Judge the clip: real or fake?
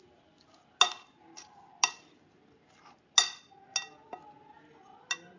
real